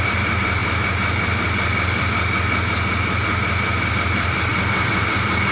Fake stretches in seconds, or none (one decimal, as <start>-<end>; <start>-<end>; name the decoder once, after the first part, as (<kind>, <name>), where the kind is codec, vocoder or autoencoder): 0.0-0.6 (vocoder, BigVGAN v2); 3.9-5.5